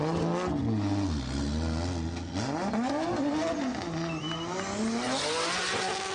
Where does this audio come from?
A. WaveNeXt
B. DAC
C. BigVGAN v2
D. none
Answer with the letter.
D